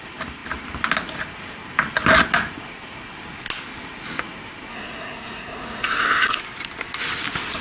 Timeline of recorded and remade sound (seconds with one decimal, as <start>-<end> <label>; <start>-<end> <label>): 0.0-4.7 recorded; 4.7-6.4 remade; 6.4-7.6 recorded